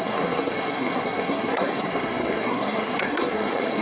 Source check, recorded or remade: remade